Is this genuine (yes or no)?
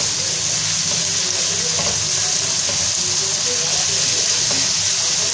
yes